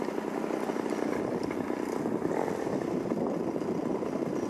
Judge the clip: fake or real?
real